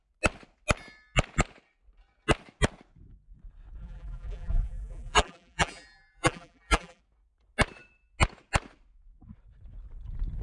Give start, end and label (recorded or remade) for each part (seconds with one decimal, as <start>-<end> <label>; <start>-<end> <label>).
0.0-3.8 recorded; 3.8-7.0 remade; 7.0-10.4 recorded

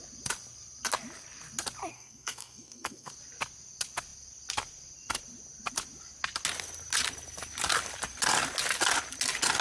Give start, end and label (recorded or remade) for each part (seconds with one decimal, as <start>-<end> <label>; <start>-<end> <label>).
0.0-1.9 recorded; 1.9-3.1 remade; 3.1-9.6 recorded

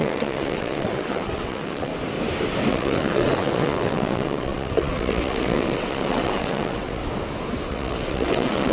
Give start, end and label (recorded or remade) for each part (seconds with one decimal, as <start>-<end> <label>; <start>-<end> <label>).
0.0-1.9 remade; 1.9-2.7 recorded; 2.7-7.0 remade; 7.0-7.7 recorded; 7.7-8.7 remade

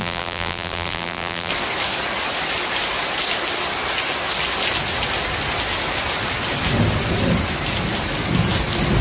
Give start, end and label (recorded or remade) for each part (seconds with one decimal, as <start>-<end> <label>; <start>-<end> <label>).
0.0-1.5 remade; 1.5-9.0 recorded

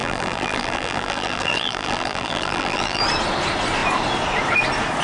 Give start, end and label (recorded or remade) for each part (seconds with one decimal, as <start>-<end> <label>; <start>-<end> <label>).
0.0-3.0 remade; 3.0-5.0 recorded

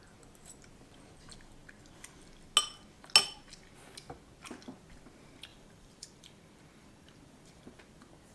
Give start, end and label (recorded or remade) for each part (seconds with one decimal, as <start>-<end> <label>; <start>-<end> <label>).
0.0-5.5 recorded; 5.5-7.8 remade; 7.8-8.3 recorded

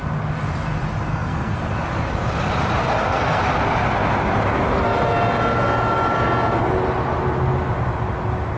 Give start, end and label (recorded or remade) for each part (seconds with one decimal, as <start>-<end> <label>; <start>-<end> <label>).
0.0-1.1 recorded; 1.1-1.6 remade; 1.6-2.8 recorded; 2.8-3.4 remade; 3.4-8.6 recorded

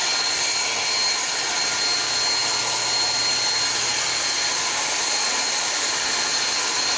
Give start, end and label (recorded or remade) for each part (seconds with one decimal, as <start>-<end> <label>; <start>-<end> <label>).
0.0-7.0 recorded